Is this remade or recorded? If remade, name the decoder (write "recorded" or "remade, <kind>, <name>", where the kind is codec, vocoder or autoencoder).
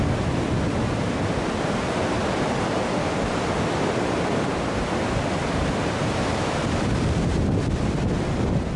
recorded